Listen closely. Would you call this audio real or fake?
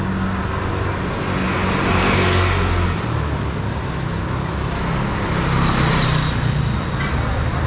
real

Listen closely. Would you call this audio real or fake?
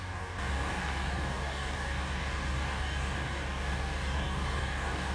fake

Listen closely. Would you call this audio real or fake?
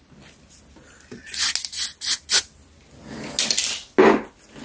real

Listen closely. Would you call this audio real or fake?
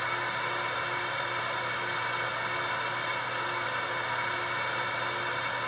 real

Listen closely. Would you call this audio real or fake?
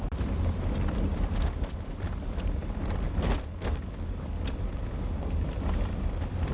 real